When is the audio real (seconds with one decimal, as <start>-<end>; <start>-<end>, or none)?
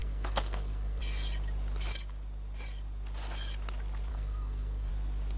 1.0-4.1; 4.9-5.4